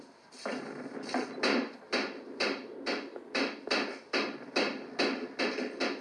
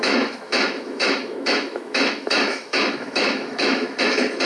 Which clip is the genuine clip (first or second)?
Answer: first